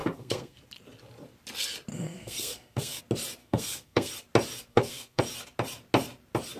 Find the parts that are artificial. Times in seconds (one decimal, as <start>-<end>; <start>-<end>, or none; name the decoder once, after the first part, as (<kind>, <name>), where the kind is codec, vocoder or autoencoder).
0.0-0.6 (codec, SNAC); 1.9-3.0; 3.4-4.1; 4.7-5.2